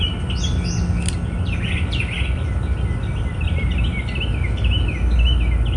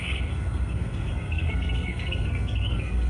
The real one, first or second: first